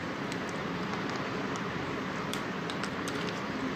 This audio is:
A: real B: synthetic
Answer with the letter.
A